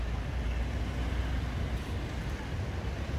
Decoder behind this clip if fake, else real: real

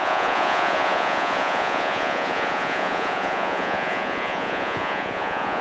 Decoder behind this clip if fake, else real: fake, vocoder, Vocos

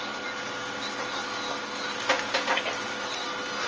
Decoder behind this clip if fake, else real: real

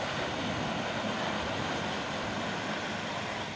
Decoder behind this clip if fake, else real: real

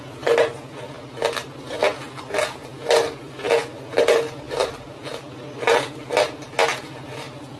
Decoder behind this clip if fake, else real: real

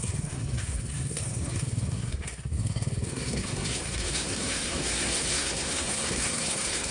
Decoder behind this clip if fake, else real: fake, codec, SNAC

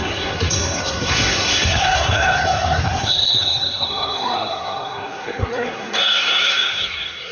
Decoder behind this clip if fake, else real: fake, codec, SNAC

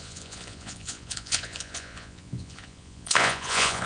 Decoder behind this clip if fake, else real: fake, vocoder, Vocos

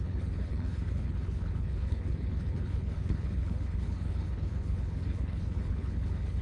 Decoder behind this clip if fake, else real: fake, codec, HILCodec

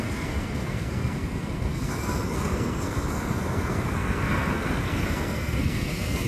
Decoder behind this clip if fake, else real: fake, codec, SNAC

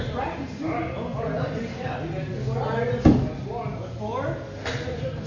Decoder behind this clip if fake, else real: real